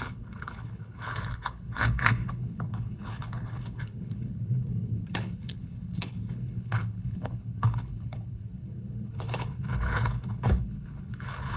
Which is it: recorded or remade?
remade